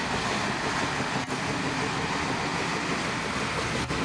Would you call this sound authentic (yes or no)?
yes